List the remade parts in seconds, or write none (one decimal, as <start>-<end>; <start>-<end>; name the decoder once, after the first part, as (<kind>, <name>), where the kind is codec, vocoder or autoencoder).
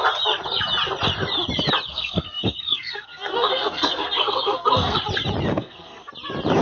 1.9-5.0 (codec, SNAC); 5.5-6.1